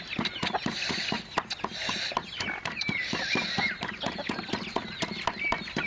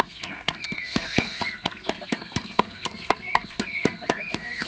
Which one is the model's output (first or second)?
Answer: second